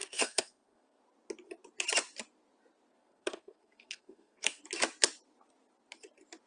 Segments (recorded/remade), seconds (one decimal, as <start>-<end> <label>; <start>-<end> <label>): 0.0-1.0 remade; 1.0-2.9 recorded; 2.9-4.6 remade; 4.6-6.5 recorded